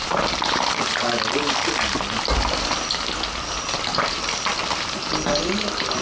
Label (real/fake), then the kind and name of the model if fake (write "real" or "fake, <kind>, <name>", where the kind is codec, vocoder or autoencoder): real